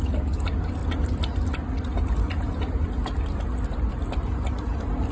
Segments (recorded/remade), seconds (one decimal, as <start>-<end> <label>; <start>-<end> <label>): 0.0-5.1 recorded